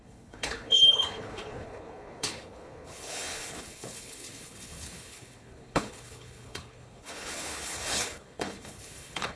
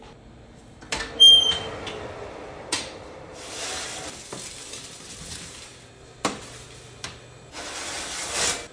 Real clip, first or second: second